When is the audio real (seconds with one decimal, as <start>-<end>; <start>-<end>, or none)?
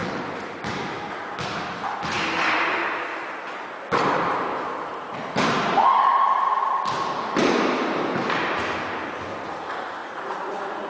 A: 0.0-10.0